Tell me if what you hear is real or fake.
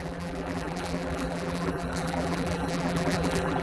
fake